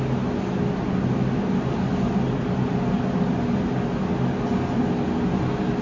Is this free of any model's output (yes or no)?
yes